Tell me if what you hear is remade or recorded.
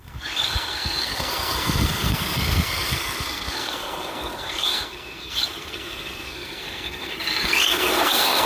remade